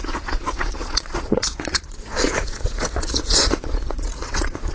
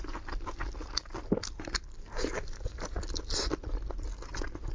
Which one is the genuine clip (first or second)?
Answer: second